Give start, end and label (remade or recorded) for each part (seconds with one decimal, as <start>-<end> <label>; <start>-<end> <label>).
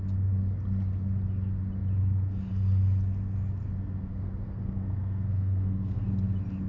0.0-4.1 recorded; 4.1-6.1 remade; 6.1-6.7 recorded